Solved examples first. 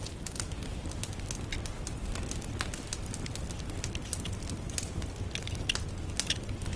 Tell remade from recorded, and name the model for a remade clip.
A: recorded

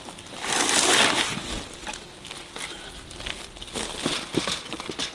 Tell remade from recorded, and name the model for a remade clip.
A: recorded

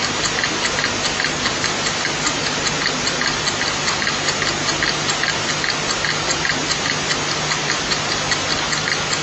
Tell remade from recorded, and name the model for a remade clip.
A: recorded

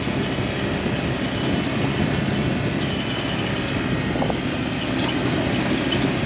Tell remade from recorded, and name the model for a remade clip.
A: recorded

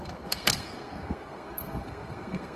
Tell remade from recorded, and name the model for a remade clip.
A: remade, codec, SNAC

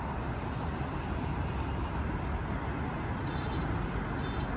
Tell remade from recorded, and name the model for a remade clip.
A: recorded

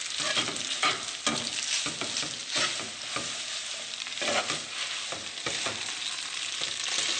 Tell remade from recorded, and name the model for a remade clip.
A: recorded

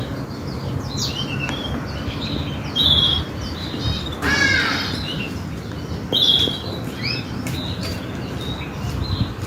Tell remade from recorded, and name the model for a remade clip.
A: recorded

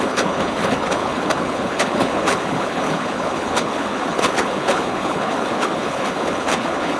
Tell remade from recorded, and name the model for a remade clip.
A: remade, codec, HILCodec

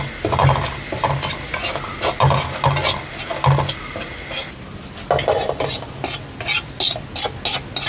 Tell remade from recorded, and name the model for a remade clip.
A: recorded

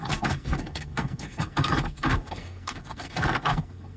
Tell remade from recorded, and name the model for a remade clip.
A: remade, codec, SNAC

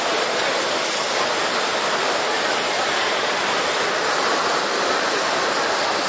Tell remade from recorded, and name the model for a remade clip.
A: recorded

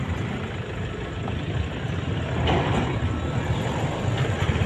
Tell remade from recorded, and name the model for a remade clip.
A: recorded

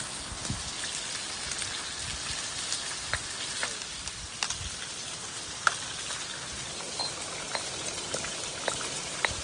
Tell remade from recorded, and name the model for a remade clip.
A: recorded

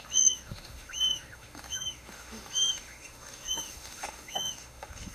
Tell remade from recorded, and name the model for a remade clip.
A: remade, autoencoder, DAC-VAE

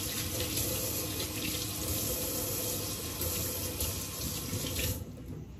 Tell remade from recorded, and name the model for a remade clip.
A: recorded